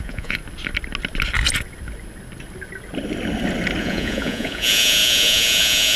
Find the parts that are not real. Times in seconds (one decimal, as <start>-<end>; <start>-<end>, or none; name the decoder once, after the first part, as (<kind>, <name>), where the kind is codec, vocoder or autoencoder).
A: 0.0-0.4 (vocoder, Vocos); 3.8-6.0